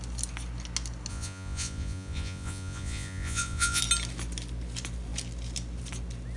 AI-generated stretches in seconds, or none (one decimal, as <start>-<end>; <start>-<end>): 1.1-3.8